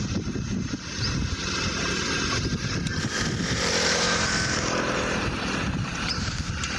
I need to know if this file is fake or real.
fake